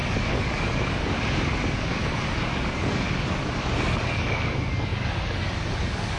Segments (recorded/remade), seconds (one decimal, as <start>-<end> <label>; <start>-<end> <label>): 0.0-6.2 remade